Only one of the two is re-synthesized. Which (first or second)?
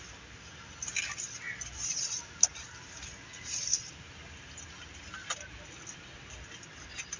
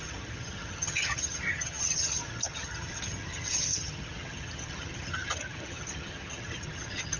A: second